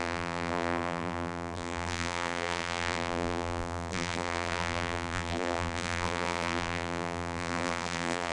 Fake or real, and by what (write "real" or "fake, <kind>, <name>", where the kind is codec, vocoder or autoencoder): fake, vocoder, BigVGAN v2